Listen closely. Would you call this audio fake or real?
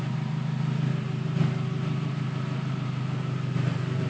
real